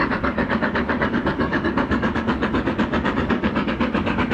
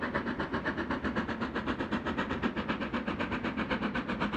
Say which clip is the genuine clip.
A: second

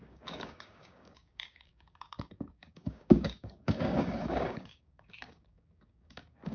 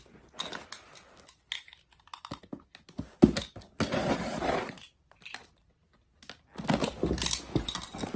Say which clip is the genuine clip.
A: second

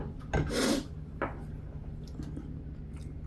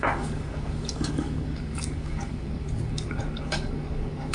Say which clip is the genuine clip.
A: first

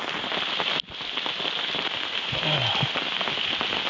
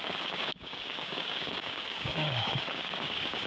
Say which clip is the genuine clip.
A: first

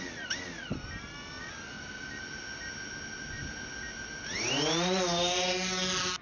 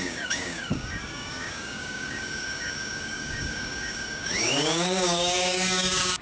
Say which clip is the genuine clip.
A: first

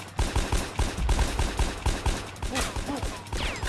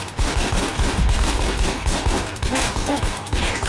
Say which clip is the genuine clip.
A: first